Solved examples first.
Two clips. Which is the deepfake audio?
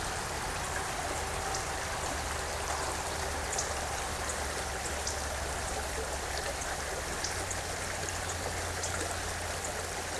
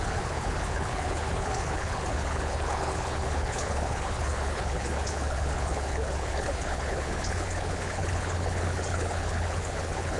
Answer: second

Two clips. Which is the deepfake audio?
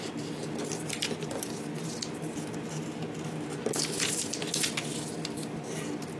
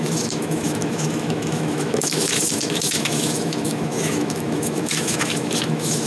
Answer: second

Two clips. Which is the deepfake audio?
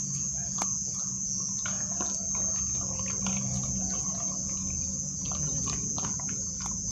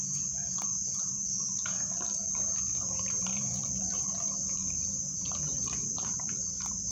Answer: second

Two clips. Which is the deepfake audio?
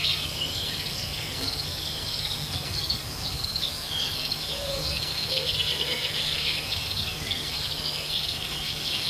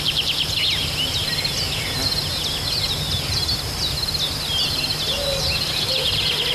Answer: first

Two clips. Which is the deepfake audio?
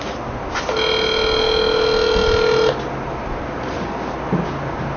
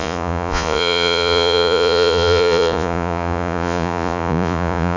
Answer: second